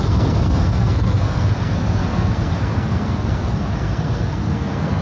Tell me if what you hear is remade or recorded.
remade